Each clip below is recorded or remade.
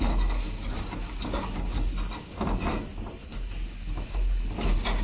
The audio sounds recorded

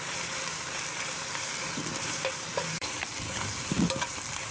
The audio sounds remade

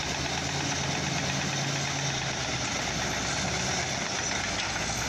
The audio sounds recorded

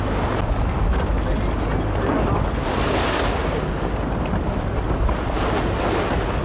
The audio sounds recorded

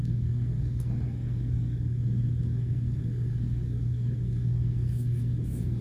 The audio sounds remade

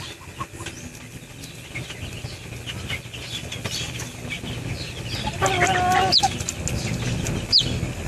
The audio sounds recorded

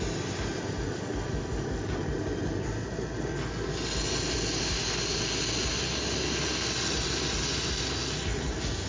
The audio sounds recorded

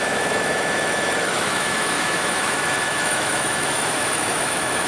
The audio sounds remade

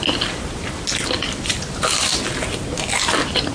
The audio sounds recorded